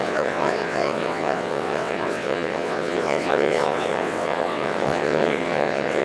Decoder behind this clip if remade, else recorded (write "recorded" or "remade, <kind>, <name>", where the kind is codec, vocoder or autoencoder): remade, vocoder, WaveNeXt